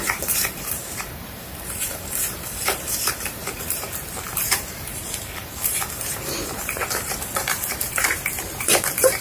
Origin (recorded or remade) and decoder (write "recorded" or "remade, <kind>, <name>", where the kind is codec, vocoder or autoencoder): remade, vocoder, BigVGAN v2